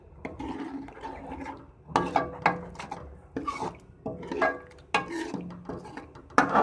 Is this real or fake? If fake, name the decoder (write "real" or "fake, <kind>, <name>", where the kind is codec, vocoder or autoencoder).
real